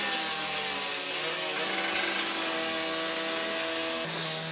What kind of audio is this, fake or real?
real